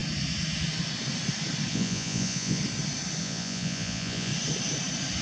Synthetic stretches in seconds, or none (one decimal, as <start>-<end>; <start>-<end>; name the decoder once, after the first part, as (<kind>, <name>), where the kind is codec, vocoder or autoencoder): 1.7-2.6 (vocoder, Vocos); 3.2-4.3